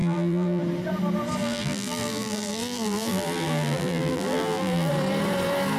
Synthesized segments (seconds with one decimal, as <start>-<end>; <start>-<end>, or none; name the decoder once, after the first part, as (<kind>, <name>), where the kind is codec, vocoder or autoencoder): 0.0-0.6 (vocoder, BigVGAN v2); 1.4-4.9